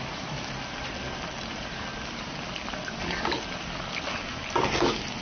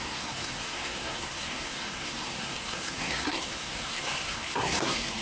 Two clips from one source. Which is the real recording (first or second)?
first